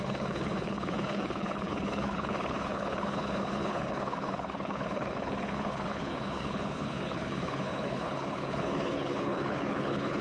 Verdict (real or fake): fake